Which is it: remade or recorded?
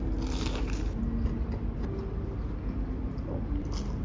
recorded